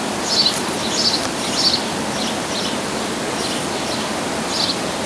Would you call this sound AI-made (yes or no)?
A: no